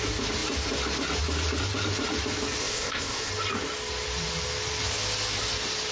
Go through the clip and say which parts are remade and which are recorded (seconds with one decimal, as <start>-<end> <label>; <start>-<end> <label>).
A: 0.0-2.6 recorded; 2.6-3.3 remade; 3.3-5.9 recorded